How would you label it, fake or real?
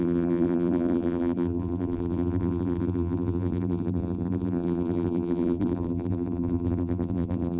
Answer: fake